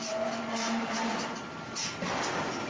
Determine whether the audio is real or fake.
real